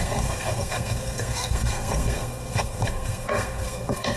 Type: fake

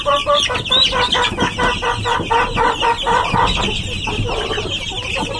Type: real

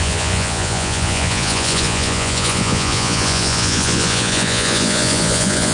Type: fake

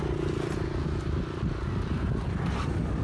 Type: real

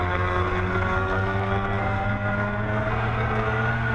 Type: fake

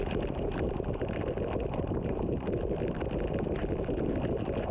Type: real